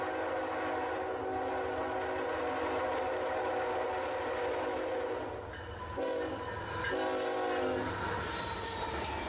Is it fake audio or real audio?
real